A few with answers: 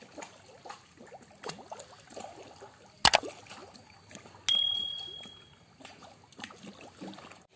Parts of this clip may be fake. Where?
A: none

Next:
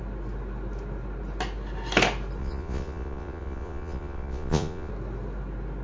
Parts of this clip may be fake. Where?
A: 2.4-4.9 (vocoder, Vocos)

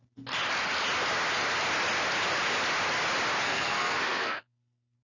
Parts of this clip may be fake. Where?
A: 3.4-5.0 (codec, SNAC)